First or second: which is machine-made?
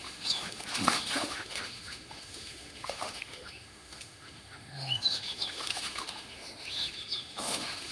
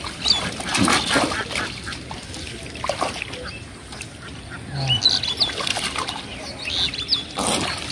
first